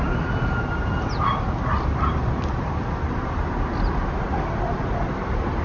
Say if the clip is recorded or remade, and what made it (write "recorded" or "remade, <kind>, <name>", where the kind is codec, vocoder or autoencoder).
recorded